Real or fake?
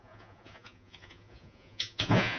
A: fake